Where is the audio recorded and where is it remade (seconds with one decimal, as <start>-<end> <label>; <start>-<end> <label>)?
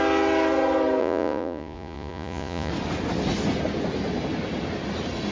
0.0-1.0 recorded; 1.0-2.7 remade; 2.7-5.3 recorded